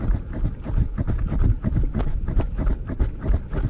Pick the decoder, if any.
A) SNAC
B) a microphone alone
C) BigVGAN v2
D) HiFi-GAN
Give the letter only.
B